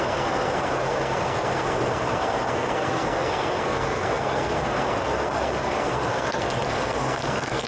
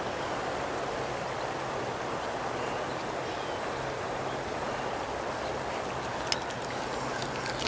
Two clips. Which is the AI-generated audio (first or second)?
first